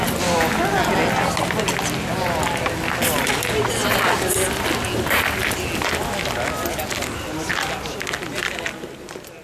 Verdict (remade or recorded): recorded